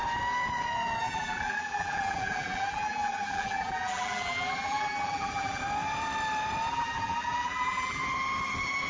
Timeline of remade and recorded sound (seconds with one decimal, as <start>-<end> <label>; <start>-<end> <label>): 0.0-1.0 recorded; 1.0-5.6 remade; 5.6-6.7 recorded; 6.7-8.0 remade; 8.0-8.9 recorded

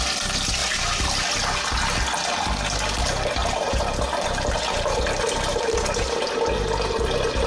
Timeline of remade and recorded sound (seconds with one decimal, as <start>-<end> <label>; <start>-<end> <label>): 0.0-0.6 recorded; 0.6-1.2 remade; 1.2-3.4 recorded; 3.4-5.0 remade; 5.0-5.5 recorded; 5.5-6.3 remade; 6.3-7.5 recorded

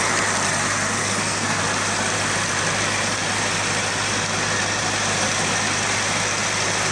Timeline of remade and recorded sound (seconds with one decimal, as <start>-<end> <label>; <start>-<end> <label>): 0.0-1.0 recorded; 1.0-1.6 remade; 1.6-6.9 recorded

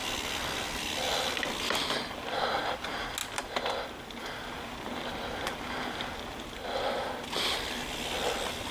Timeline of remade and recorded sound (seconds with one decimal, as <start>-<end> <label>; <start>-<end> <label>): 0.0-8.7 recorded